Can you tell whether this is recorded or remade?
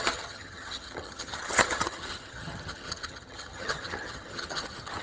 remade